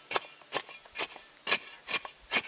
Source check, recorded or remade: recorded